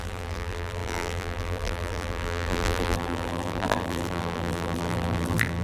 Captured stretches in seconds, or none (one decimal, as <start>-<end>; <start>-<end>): none